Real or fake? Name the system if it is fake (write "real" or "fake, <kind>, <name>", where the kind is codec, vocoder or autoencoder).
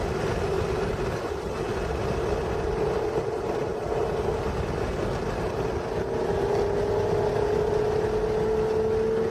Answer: real